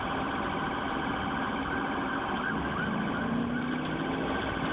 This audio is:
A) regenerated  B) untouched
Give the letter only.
B